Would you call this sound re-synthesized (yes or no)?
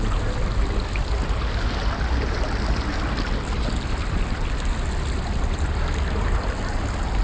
no